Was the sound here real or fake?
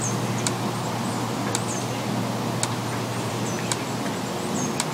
real